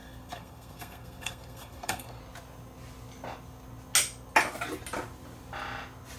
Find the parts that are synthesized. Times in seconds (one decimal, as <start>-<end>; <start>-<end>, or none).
0.0-2.2